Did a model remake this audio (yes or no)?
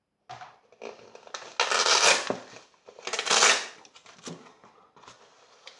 no